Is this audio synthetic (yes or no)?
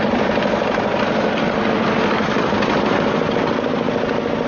no